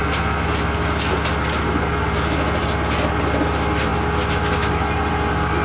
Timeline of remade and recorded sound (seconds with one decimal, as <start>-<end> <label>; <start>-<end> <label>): 0.0-5.6 recorded